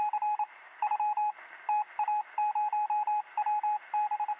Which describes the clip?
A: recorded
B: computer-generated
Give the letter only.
A